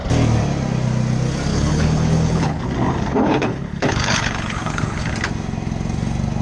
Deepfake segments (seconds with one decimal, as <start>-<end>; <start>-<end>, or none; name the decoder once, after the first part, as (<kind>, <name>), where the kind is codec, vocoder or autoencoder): 1.5-2.6 (codec, HILCodec); 3.1-5.1